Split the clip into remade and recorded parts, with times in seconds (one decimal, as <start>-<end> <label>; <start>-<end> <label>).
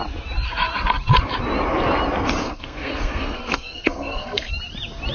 0.0-2.4 recorded; 2.4-4.5 remade; 4.5-5.1 recorded